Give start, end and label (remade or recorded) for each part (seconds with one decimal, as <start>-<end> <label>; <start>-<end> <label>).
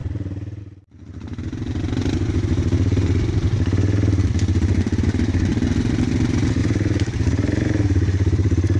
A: 0.0-2.0 recorded; 2.0-5.0 remade; 5.0-6.6 recorded; 6.6-8.8 remade